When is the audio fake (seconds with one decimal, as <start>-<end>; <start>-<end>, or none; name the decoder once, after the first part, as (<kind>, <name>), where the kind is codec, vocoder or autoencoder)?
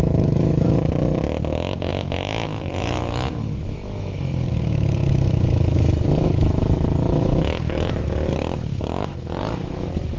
0.0-10.2 (autoencoder, DAC-VAE)